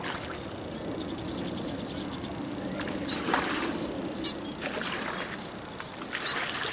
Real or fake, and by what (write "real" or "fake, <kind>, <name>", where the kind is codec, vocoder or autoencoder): real